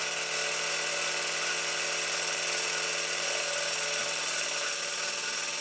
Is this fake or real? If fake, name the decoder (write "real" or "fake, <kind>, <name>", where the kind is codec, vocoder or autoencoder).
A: real